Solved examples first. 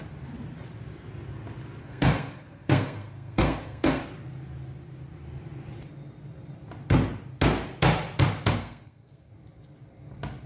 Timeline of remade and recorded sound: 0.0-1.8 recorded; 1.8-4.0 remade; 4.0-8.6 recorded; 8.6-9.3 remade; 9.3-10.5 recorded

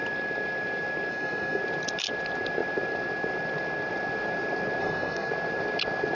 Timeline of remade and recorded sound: 0.0-1.1 recorded; 1.1-1.6 remade; 1.6-4.8 recorded; 4.8-5.3 remade; 5.3-6.1 recorded